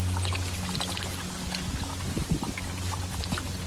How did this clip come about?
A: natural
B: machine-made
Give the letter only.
A